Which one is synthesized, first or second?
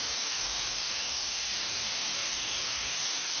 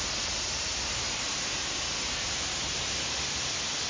first